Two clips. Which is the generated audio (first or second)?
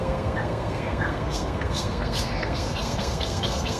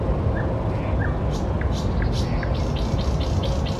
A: first